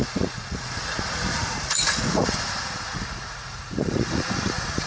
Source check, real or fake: fake